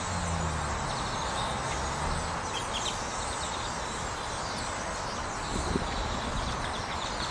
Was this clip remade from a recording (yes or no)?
no